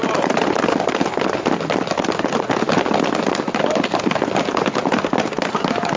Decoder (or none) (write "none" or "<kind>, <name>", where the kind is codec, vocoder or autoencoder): none